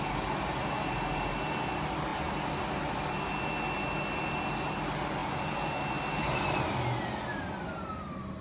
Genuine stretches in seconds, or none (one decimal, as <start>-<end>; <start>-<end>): 0.0-8.4